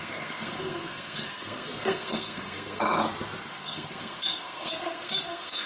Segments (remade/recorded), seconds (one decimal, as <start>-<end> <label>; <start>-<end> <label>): 0.0-2.9 remade; 2.9-3.5 recorded; 3.5-5.7 remade